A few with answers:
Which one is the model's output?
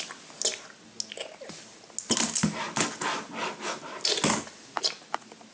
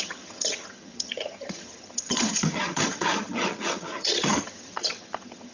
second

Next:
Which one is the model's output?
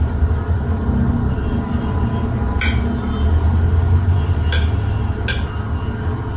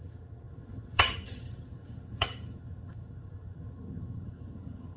second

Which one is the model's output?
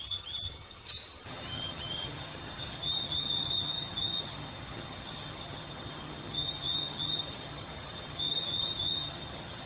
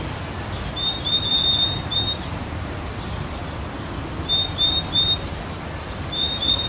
first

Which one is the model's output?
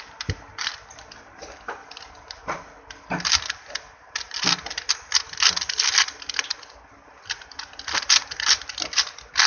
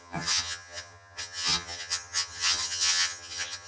second